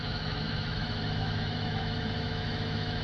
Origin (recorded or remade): remade